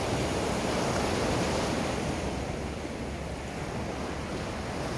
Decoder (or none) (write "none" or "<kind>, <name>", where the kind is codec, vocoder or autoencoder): none